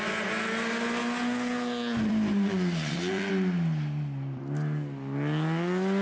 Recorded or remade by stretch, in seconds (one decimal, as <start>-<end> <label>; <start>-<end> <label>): 0.0-2.3 recorded; 2.3-3.3 remade; 3.3-6.0 recorded